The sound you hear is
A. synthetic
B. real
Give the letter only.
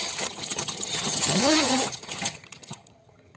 A